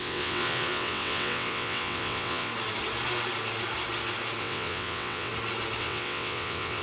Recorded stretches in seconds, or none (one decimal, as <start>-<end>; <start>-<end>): 2.5-4.4; 5.3-5.8

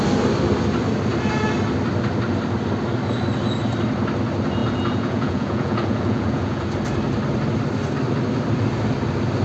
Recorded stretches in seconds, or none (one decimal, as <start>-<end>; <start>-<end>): 0.0-4.6; 6.7-9.4

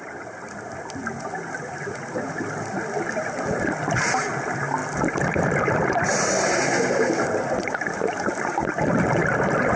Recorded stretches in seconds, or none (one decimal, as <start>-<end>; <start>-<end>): 0.0-9.8

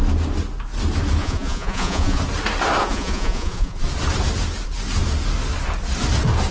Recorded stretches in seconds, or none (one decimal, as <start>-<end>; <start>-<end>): 0.0-1.2; 2.2-2.8; 3.8-6.5

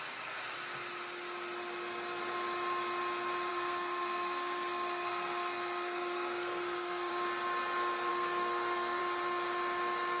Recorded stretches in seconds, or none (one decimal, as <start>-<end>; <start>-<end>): 0.0-3.5; 7.1-8.1; 9.0-10.2

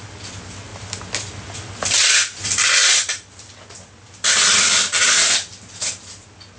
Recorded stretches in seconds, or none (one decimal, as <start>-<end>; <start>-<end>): 0.0-6.6